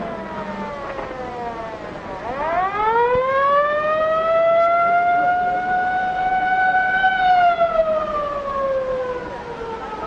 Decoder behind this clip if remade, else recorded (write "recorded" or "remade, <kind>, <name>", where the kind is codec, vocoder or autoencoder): recorded